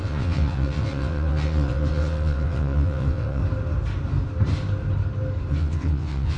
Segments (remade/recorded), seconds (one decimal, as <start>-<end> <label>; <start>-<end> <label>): 0.0-3.4 remade; 3.4-5.5 recorded; 5.5-6.4 remade